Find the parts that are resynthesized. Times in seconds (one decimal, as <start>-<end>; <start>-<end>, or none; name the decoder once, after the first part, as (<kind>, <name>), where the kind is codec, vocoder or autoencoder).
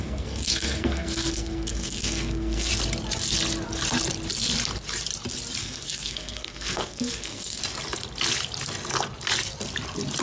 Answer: 0.0-2.7 (codec, SNAC); 5.6-7.6